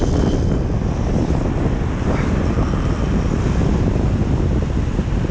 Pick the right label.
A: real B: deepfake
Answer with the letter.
A